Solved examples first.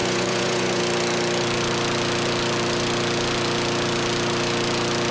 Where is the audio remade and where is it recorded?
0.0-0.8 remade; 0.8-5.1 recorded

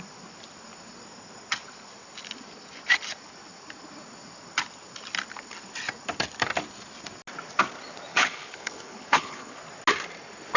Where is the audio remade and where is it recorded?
0.0-8.1 recorded; 8.1-9.5 remade; 9.5-10.6 recorded

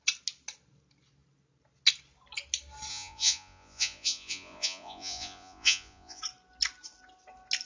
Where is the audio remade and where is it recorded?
0.0-2.9 recorded; 2.9-6.2 remade; 6.2-7.7 recorded

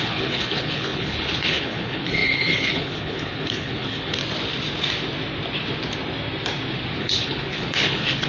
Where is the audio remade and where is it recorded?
0.0-4.2 remade; 4.2-7.0 recorded; 7.0-8.3 remade

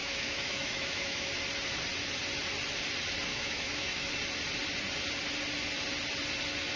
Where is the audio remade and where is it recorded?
0.0-1.3 remade; 1.3-3.3 recorded; 3.3-4.1 remade; 4.1-6.8 recorded

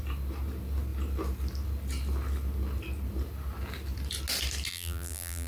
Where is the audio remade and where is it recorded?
0.0-4.7 recorded; 4.7-5.5 remade